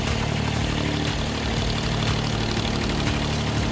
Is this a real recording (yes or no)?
yes